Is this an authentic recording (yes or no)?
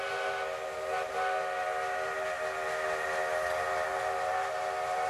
yes